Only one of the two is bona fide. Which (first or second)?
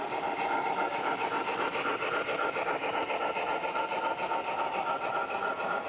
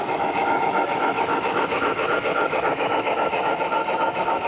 first